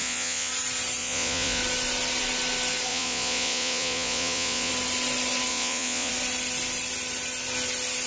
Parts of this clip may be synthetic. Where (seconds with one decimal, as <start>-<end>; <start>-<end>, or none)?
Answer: 0.0-0.5; 1.0-1.6; 2.9-4.7; 5.5-6.1